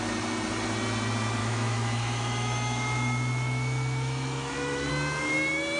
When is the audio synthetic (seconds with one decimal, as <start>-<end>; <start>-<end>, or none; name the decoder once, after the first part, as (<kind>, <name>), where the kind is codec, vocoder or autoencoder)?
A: 1.4-4.9 (autoencoder, DAC-VAE)